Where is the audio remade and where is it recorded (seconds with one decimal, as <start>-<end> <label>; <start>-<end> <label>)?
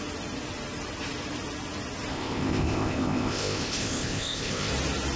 0.0-2.1 recorded; 2.1-4.7 remade; 4.7-5.2 recorded